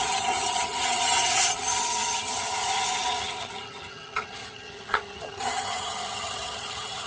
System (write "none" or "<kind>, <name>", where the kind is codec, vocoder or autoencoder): vocoder, HiFi-GAN